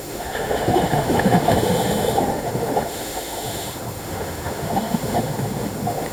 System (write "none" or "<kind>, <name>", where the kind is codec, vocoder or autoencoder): autoencoder, DAC-VAE